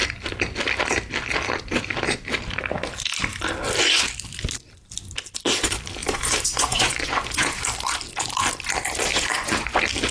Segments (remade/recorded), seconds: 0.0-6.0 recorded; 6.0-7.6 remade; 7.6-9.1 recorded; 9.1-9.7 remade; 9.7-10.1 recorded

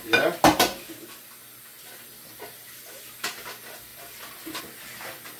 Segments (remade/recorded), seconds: 0.0-1.7 recorded; 1.7-2.8 remade; 2.8-3.9 recorded; 3.9-4.6 remade; 4.6-5.4 recorded

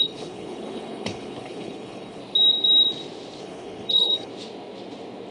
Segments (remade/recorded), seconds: 0.0-2.2 remade; 2.2-3.4 recorded; 3.4-4.3 remade; 4.3-5.3 recorded

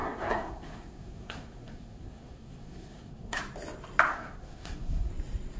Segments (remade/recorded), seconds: 0.0-3.4 remade; 3.4-4.1 recorded; 4.1-5.1 remade; 5.1-5.6 recorded

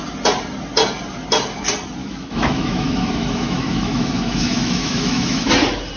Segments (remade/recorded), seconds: 0.0-2.0 recorded; 2.0-5.5 remade; 5.5-6.0 recorded

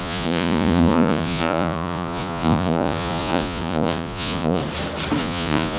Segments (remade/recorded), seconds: 0.0-4.6 remade; 4.6-5.2 recorded; 5.2-5.8 remade